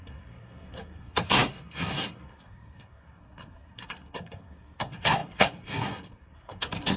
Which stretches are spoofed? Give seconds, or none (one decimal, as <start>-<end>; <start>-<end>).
0.0-7.0